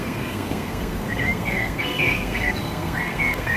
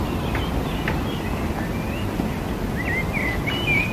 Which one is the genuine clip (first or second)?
second